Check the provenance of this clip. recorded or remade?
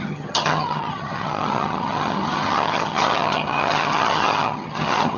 remade